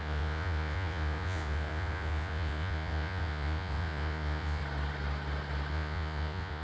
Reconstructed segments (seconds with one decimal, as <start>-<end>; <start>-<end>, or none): 0.0-4.6; 5.7-6.6